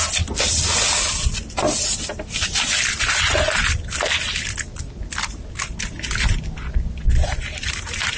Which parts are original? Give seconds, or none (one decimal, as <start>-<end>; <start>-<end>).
0.0-8.2